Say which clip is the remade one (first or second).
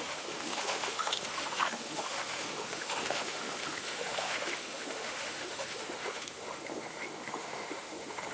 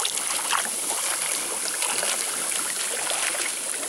first